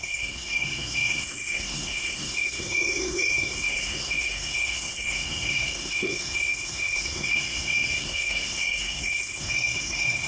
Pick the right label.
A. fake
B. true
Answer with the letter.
A